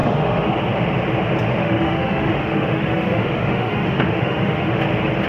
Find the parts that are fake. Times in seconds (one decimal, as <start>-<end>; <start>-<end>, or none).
0.0-0.5; 1.6-4.8